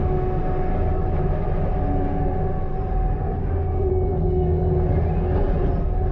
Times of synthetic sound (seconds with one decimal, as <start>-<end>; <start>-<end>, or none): 0.0-0.7; 3.4-3.9